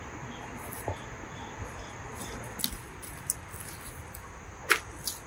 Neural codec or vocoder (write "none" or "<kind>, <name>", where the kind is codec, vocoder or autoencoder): none